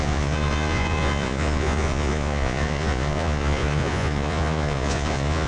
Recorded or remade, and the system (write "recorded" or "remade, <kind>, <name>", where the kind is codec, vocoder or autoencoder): remade, vocoder, Vocos